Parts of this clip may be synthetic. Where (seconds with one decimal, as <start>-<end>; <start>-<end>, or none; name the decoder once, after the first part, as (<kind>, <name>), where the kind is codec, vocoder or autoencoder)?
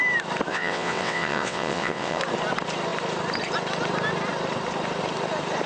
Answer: 0.5-2.2 (vocoder, WaveNeXt)